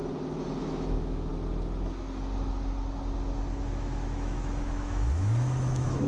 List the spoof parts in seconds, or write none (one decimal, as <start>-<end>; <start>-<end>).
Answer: 0.6-1.3; 3.6-6.1